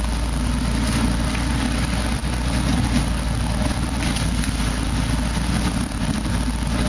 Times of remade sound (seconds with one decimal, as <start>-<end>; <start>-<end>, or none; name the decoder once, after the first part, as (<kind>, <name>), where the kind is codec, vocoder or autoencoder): none